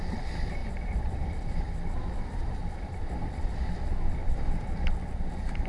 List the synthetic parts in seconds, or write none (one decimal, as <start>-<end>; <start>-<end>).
0.6-3.7; 4.2-5.1